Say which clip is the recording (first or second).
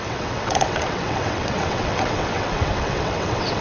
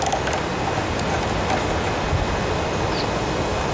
second